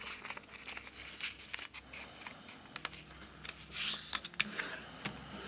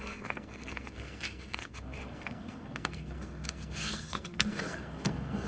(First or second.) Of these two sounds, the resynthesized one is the second